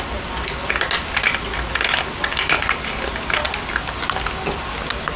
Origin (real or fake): real